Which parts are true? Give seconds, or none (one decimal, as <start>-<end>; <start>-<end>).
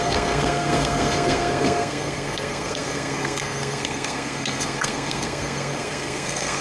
none